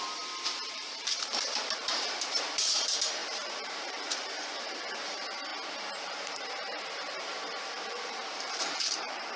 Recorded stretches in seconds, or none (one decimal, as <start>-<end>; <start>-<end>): 5.5-6.0